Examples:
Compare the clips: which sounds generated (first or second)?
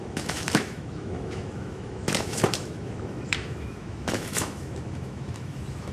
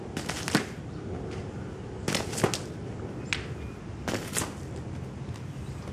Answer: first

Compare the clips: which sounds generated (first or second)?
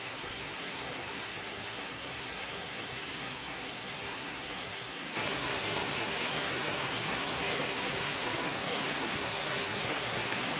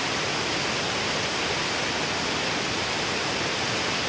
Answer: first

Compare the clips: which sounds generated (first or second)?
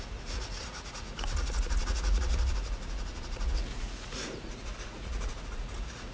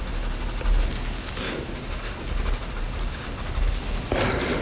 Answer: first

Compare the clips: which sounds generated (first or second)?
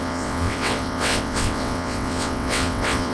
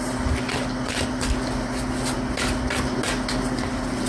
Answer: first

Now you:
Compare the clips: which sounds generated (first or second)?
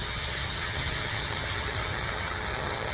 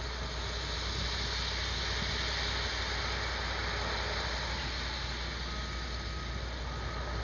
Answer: first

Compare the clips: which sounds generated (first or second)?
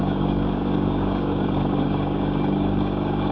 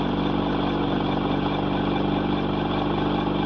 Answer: first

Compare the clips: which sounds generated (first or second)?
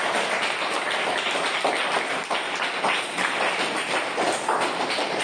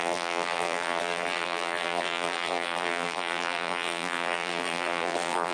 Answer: second